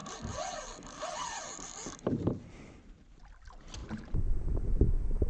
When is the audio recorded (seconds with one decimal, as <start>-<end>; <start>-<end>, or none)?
3.2-3.8; 4.8-5.3